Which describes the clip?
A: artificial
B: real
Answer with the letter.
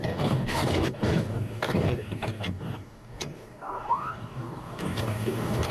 A